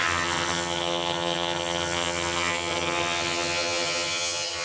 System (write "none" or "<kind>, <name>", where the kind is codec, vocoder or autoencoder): vocoder, HiFi-GAN